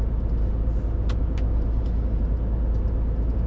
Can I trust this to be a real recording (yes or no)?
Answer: yes